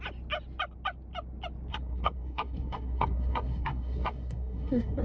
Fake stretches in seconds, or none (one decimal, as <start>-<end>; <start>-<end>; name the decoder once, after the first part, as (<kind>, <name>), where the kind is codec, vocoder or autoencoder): 1.7-5.0 (codec, SNAC)